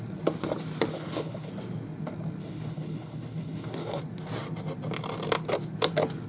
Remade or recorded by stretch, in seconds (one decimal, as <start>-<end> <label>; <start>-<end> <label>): 0.0-0.9 recorded; 0.9-1.5 remade; 1.5-2.4 recorded; 2.4-4.0 remade; 4.0-6.3 recorded